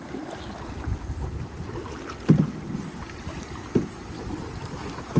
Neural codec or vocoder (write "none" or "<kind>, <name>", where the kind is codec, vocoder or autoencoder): none